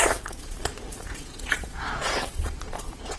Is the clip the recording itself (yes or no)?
no